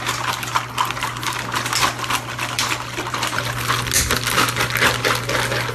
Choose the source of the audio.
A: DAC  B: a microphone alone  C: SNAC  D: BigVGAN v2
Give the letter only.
B